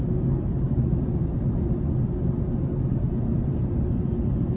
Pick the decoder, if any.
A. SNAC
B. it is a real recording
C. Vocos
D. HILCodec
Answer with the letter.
B